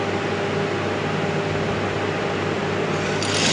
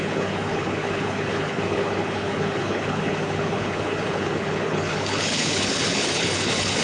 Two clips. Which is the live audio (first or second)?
first